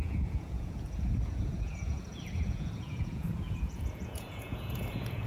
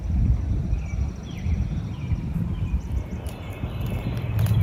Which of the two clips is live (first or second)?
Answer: second